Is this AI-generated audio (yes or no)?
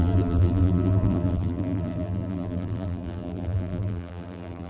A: yes